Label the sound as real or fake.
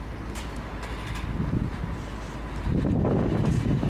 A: real